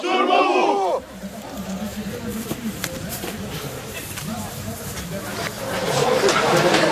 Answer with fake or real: fake